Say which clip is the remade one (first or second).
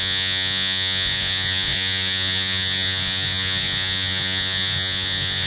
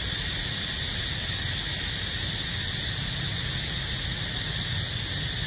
first